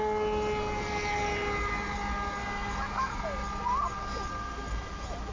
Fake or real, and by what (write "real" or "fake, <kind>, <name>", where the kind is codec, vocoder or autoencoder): real